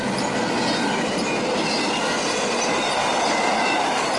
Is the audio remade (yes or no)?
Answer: no